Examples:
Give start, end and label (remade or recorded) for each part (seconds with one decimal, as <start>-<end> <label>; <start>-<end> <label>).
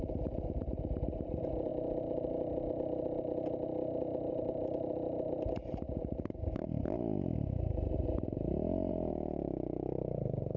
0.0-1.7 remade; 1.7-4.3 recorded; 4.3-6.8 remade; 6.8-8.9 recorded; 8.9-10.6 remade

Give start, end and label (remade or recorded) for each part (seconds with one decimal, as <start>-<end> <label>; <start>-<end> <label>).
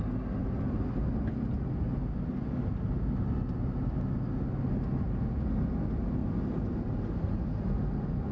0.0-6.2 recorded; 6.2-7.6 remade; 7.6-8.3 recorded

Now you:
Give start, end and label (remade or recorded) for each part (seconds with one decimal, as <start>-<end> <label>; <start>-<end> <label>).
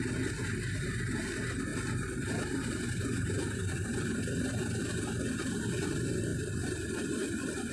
0.0-1.7 recorded; 1.7-4.8 remade; 4.8-6.3 recorded; 6.3-7.7 remade